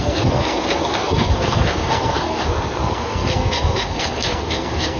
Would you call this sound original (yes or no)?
no